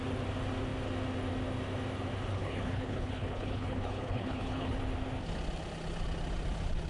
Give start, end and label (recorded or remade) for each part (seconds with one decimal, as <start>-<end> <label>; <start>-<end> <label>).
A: 0.0-2.3 recorded; 2.3-4.8 remade; 4.8-6.9 recorded

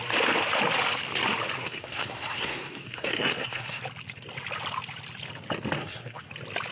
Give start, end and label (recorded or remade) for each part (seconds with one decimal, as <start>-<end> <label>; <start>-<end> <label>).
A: 0.0-1.6 recorded; 1.6-3.8 remade; 3.8-5.8 recorded; 5.8-6.3 remade; 6.3-6.7 recorded

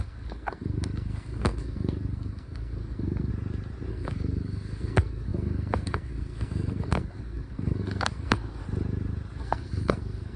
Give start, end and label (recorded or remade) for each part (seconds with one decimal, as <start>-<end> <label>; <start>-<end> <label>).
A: 0.0-3.3 remade; 3.3-3.9 recorded; 3.9-8.6 remade; 8.6-9.4 recorded; 9.4-10.4 remade

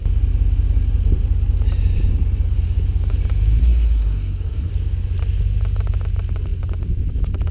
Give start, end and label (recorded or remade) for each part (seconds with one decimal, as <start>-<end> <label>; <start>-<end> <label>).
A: 0.0-3.6 recorded; 3.6-4.7 remade; 4.7-7.5 recorded

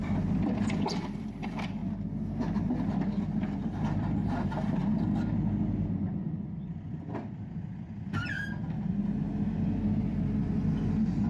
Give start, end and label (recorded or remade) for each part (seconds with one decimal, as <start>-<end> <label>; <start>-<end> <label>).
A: 0.0-1.8 remade; 1.8-3.2 recorded; 3.2-4.8 remade; 4.8-10.0 recorded; 10.0-11.3 remade

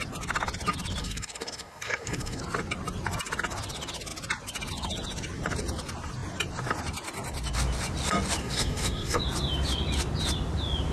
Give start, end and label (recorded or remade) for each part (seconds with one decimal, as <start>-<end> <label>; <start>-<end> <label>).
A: 0.0-1.0 recorded; 1.0-2.4 remade; 2.4-8.4 recorded; 8.4-9.2 remade; 9.2-10.9 recorded